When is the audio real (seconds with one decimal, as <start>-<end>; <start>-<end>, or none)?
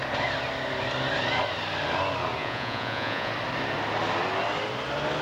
0.0-2.4; 3.3-5.2